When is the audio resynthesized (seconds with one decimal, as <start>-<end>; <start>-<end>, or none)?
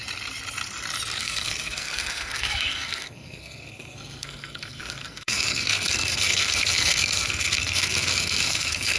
1.2-9.0